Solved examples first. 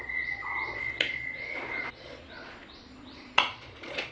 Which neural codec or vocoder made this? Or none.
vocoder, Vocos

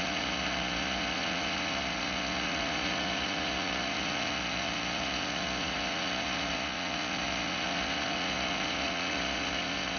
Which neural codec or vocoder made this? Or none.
vocoder, Vocos